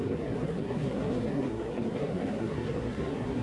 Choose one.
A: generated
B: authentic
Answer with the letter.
A